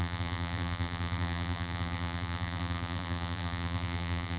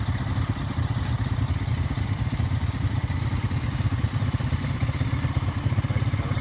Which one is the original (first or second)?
second